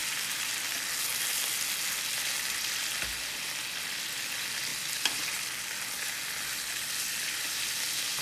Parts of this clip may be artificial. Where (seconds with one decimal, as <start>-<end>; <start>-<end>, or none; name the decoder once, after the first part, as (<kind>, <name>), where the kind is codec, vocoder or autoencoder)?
0.0-0.5 (vocoder, BigVGAN v2)